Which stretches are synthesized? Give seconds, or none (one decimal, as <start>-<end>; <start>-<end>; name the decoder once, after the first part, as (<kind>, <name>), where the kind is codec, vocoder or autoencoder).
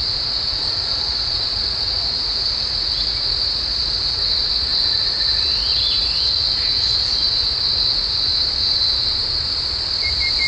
0.0-8.3 (vocoder, Vocos)